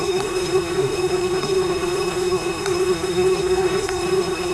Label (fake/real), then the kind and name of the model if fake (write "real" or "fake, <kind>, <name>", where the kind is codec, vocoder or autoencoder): fake, codec, SNAC